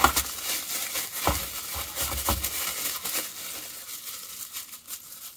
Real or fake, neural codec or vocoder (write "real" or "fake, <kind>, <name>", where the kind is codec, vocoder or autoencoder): real